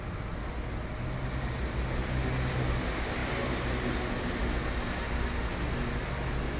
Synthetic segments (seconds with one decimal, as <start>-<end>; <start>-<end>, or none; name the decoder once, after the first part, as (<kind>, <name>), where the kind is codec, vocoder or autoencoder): none